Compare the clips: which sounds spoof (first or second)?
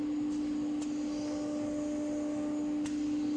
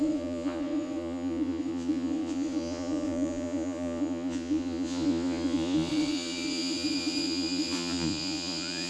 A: second